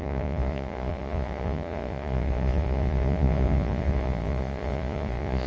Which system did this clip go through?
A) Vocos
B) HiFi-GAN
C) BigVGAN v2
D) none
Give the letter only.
A